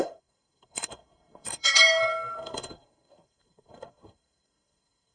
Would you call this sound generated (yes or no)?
yes